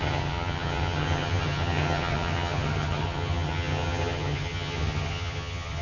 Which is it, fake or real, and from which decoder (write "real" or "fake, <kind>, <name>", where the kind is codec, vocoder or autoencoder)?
fake, vocoder, HiFi-GAN